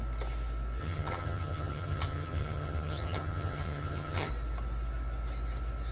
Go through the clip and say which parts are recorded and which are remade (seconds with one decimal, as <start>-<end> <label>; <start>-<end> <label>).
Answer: 0.0-0.8 recorded; 0.8-4.3 remade; 4.3-5.9 recorded